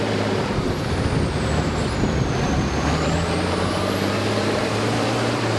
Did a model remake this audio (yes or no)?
yes